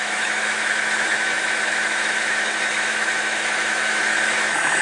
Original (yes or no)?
no